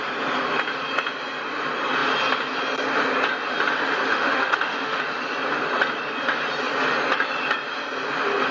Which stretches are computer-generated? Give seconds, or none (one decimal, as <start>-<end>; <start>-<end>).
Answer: 4.1-5.0